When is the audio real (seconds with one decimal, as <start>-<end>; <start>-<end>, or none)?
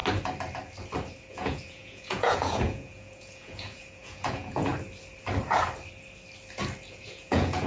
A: 0.0-1.3; 4.7-6.9